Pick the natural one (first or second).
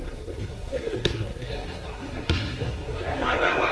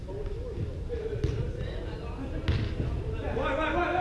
second